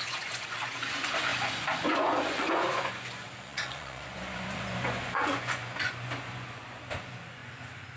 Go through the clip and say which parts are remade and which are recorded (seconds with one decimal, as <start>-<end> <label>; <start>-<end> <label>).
0.0-8.0 remade